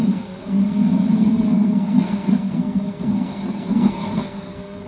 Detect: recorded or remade remade